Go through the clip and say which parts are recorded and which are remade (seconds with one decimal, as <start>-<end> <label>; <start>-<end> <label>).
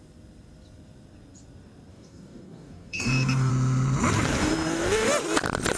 0.0-1.9 recorded; 1.9-3.5 remade; 3.5-4.4 recorded; 4.4-5.1 remade; 5.1-5.8 recorded